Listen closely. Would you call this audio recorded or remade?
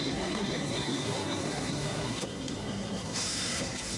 remade